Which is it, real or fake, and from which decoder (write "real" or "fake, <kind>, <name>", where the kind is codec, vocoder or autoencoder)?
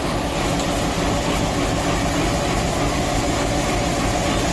real